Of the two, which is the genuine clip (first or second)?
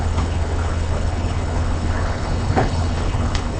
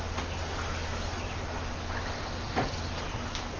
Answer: second